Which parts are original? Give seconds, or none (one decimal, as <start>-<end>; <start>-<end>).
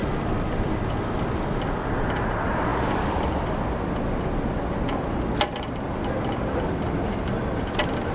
0.0-8.1